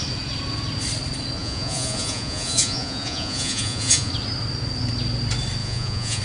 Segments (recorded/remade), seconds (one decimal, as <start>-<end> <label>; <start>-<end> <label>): 0.0-1.4 recorded; 1.4-4.1 remade; 4.1-5.6 recorded; 5.6-6.2 remade